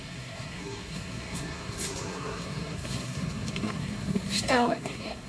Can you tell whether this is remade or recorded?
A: remade